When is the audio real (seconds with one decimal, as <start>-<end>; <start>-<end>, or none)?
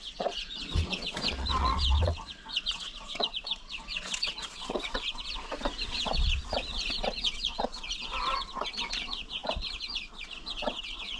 none